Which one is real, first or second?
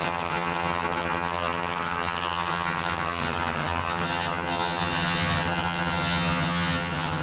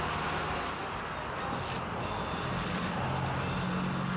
second